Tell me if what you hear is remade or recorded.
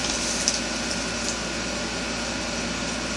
recorded